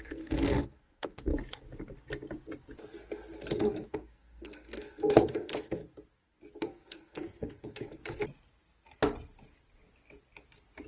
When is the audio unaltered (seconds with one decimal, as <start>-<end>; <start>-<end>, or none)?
1.3-3.9; 5.8-6.6; 8.0-10.9